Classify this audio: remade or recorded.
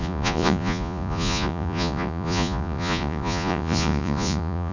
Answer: remade